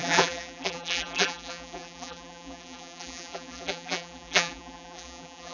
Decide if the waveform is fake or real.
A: fake